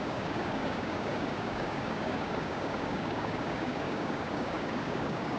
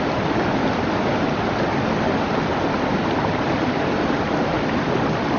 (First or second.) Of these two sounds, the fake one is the first